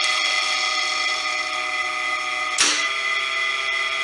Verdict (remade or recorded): recorded